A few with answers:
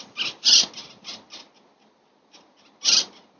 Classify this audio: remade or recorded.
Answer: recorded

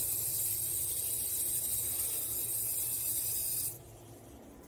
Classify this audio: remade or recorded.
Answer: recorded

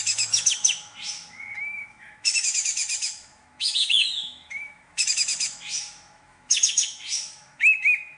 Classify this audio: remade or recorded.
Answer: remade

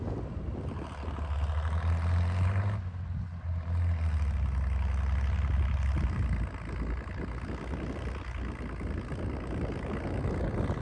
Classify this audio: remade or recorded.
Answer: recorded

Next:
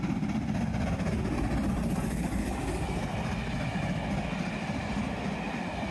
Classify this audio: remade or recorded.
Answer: recorded